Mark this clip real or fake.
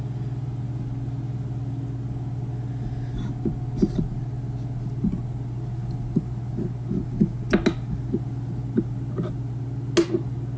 real